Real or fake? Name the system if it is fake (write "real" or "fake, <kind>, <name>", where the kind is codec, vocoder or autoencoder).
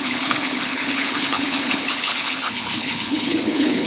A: fake, codec, HILCodec